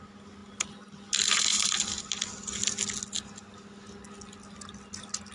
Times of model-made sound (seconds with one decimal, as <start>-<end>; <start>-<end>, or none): none